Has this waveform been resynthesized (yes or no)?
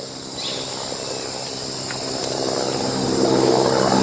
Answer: no